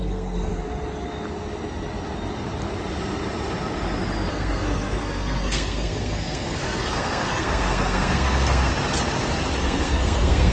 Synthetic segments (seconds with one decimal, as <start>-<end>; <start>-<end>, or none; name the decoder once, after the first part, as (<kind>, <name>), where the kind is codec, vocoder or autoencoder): 0.0-0.5 (codec, SNAC); 4.3-8.7; 9.6-10.5

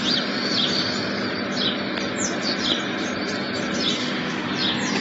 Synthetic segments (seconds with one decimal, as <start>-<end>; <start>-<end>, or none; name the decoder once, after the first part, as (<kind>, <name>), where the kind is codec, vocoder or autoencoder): 4.0-4.5 (autoencoder, DAC-VAE)

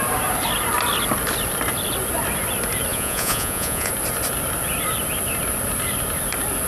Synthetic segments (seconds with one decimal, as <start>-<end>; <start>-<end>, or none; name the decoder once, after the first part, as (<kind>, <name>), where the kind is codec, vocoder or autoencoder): 2.9-3.9 (vocoder, Vocos)